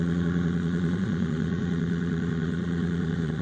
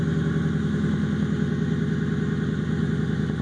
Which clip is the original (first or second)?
second